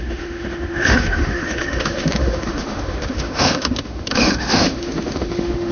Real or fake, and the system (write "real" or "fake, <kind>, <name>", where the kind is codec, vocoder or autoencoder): fake, autoencoder, DAC-VAE